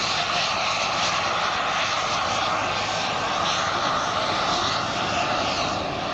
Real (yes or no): yes